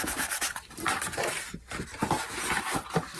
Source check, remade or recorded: recorded